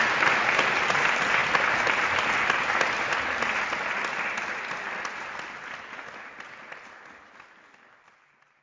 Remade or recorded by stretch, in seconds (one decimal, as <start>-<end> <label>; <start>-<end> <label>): 0.0-8.6 recorded